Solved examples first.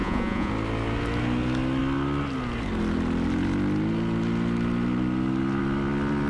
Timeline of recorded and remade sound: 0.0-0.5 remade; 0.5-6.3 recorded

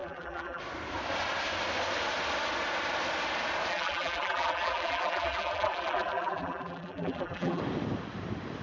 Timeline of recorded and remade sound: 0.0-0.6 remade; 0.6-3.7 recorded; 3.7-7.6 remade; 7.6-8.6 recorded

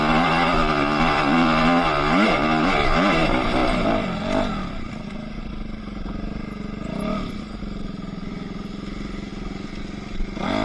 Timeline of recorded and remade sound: 0.0-10.6 recorded

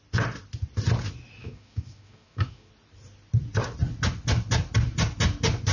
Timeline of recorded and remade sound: 0.0-1.4 recorded; 1.4-2.7 remade; 2.7-5.7 recorded

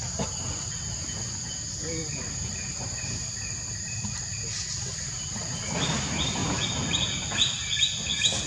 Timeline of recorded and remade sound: 0.0-8.5 recorded

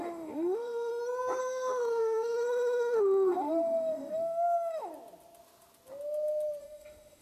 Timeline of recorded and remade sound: 0.0-0.9 remade; 0.9-1.4 recorded; 1.4-4.9 remade; 4.9-6.6 recorded; 6.6-7.2 remade

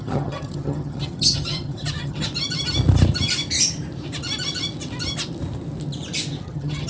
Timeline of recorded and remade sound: 0.0-2.3 remade; 2.3-6.4 recorded; 6.4-6.9 remade

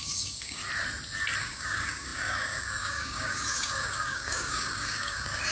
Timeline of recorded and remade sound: 0.0-0.6 remade; 0.6-1.4 recorded; 1.4-5.5 remade